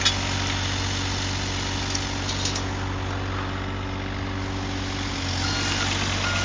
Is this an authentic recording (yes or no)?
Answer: yes